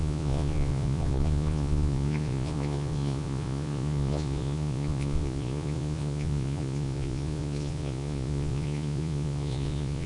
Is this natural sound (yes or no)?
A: no